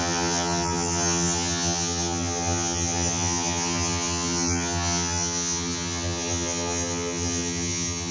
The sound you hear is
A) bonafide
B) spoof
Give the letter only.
B